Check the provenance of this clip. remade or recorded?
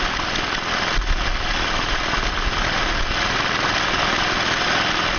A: recorded